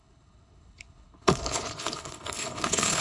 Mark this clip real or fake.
fake